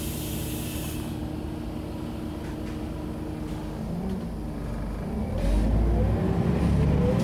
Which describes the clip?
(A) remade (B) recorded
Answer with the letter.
B